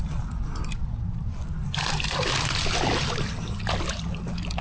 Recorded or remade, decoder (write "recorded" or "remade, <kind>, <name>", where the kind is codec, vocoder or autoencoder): recorded